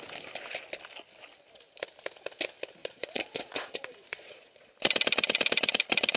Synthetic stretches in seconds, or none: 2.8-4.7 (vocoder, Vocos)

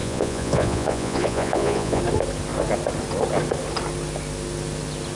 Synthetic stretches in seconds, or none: 0.0-2.0 (vocoder, Vocos)

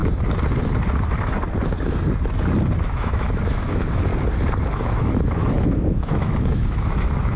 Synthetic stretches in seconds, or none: 2.8-4.1 (autoencoder, DAC-VAE); 4.6-7.4